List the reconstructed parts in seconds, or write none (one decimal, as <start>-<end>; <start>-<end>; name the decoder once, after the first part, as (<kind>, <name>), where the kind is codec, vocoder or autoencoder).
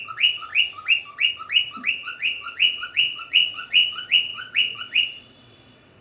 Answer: 0.0-0.5 (vocoder, WaveNeXt); 1.9-6.0